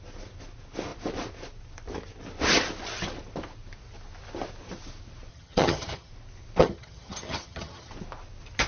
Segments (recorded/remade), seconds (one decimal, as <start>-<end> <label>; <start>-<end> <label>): 0.0-5.3 recorded; 5.3-6.1 remade; 6.1-6.6 recorded; 6.6-7.9 remade; 7.9-8.7 recorded